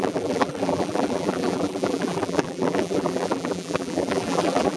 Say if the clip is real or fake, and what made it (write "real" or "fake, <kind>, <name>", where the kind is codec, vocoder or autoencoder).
fake, vocoder, BigVGAN v2